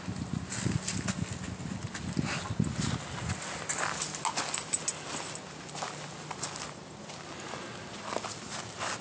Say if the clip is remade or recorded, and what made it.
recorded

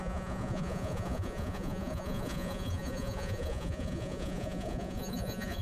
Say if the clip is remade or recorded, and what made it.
remade, vocoder, Vocos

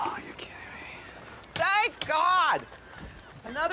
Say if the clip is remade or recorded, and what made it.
recorded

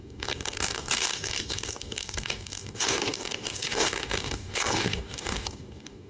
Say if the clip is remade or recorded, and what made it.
remade, codec, DAC